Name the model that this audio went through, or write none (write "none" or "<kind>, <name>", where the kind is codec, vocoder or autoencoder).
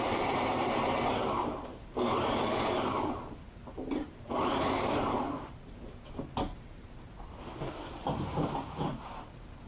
vocoder, BigVGAN v2